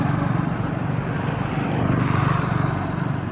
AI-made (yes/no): no